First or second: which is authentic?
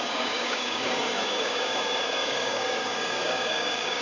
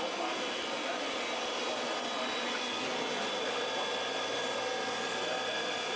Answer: second